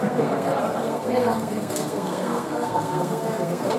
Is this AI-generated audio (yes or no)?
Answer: yes